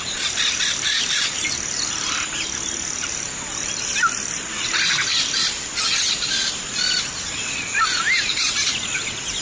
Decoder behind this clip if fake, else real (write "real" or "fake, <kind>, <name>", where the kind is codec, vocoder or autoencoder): real